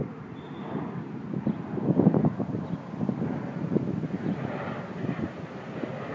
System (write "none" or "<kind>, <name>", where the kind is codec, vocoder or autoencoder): none